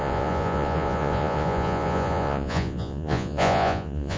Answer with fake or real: fake